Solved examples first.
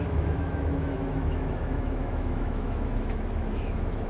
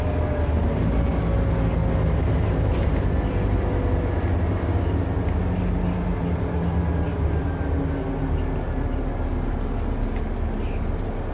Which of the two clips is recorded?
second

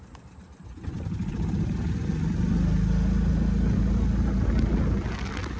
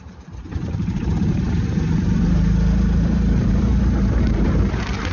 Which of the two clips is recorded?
first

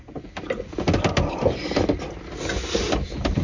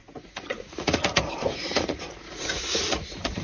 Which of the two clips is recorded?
first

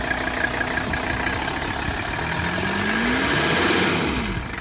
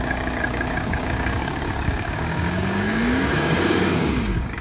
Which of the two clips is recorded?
first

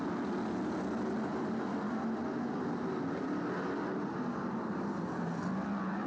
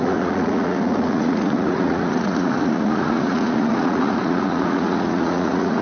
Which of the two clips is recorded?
first